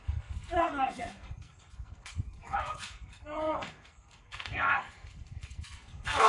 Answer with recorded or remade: remade